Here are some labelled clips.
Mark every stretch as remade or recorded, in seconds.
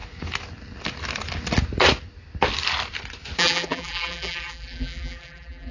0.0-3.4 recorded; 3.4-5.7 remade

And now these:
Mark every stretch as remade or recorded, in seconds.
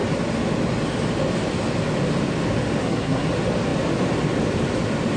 0.0-2.8 recorded; 2.8-3.3 remade; 3.3-5.2 recorded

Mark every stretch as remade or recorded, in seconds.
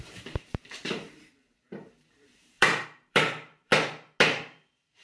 0.0-3.7 remade; 3.7-4.4 recorded; 4.4-5.0 remade